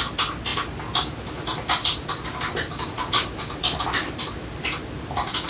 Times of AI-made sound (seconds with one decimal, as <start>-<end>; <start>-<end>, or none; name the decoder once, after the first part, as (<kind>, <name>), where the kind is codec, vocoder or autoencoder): none